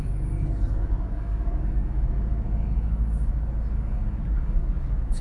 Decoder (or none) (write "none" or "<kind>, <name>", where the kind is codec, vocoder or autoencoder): codec, DAC